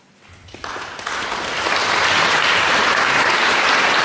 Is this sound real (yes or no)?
yes